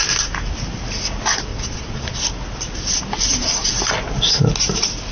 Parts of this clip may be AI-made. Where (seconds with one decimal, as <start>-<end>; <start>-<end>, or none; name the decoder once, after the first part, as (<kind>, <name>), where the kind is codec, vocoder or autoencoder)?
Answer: 1.5-2.2 (vocoder, Vocos)